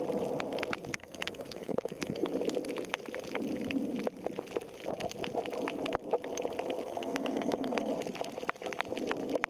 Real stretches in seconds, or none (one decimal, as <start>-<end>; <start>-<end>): 0.0-0.9; 2.3-6.8; 7.9-9.5